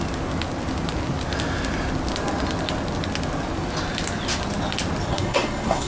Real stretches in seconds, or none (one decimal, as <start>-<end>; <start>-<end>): 0.0-5.1